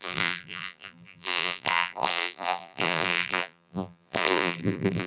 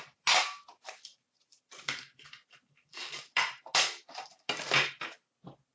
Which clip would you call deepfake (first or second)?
first